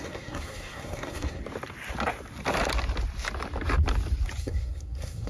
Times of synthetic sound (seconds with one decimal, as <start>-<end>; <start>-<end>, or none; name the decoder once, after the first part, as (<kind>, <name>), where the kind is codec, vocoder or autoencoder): 0.0-1.4 (codec, SNAC); 4.4-5.3